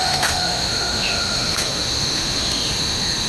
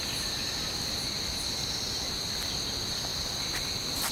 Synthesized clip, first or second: first